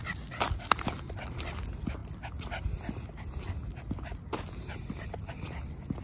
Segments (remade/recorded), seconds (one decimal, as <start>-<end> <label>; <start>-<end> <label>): 0.0-6.0 recorded